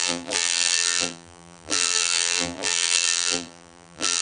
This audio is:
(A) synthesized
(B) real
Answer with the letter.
A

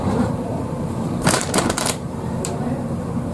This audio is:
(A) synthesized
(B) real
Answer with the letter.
A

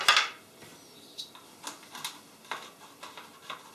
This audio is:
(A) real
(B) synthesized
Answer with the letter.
A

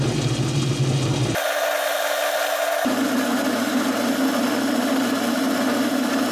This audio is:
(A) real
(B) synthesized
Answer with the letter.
A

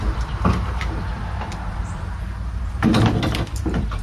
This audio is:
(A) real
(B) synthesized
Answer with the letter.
B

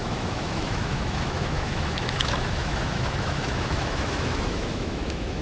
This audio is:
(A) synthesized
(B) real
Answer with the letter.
A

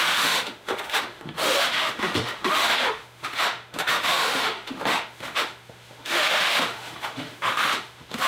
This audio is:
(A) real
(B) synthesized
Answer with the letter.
B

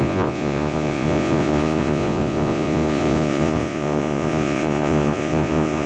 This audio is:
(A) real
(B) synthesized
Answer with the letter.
B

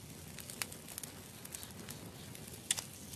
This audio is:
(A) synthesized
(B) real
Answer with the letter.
B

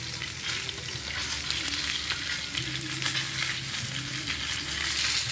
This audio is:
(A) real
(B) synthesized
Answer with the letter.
A